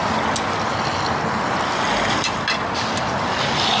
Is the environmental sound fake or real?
real